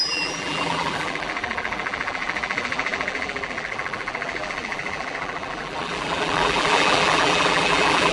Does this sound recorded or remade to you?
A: remade